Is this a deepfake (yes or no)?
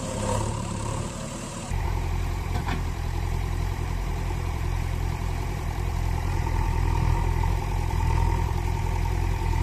yes